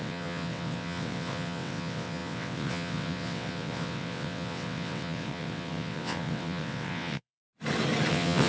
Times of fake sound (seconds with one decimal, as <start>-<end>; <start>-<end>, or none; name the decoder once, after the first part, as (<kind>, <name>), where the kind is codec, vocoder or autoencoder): 0.0-7.4 (vocoder, WaveNeXt); 8.1-8.5